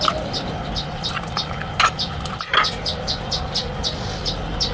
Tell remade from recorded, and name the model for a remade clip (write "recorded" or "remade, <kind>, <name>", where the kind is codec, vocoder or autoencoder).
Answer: recorded